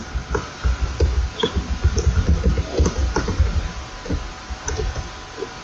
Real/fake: real